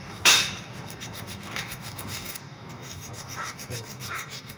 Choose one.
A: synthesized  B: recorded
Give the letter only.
A